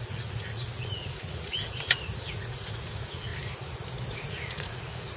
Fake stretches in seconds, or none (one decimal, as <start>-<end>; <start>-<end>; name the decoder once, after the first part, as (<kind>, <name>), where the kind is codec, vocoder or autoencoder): 0.0-3.3 (vocoder, Vocos); 4.1-5.2